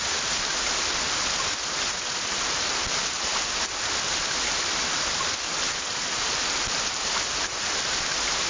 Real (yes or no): yes